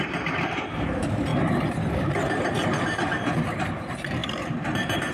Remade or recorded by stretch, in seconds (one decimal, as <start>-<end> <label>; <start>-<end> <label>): 0.0-4.2 remade; 4.2-5.1 recorded